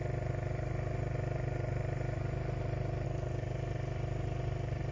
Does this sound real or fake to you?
real